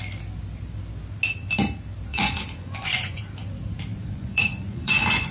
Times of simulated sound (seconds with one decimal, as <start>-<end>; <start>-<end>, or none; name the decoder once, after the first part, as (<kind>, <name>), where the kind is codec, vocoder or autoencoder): 2.1-3.2 (vocoder, Vocos); 3.9-5.3